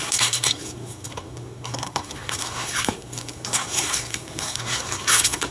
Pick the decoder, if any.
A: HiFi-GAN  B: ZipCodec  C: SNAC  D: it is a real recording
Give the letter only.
C